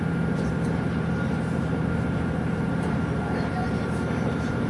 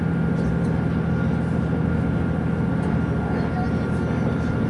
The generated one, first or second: first